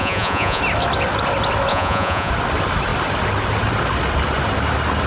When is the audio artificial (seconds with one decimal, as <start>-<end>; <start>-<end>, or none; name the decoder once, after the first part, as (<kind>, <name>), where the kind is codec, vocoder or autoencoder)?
0.0-0.6 (vocoder, Vocos); 1.7-2.3